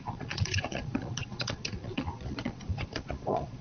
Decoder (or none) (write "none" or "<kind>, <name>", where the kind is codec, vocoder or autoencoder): vocoder, Vocos